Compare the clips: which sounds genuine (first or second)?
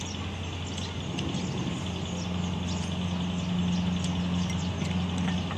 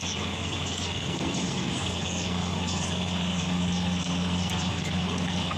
first